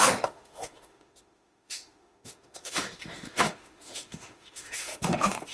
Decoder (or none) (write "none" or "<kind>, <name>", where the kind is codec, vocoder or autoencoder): autoencoder, DAC-VAE